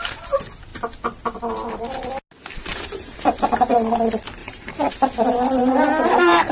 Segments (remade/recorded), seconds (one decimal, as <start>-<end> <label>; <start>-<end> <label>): 0.0-2.7 recorded; 2.7-3.2 remade; 3.2-4.4 recorded; 4.4-4.9 remade; 4.9-5.6 recorded; 5.6-6.5 remade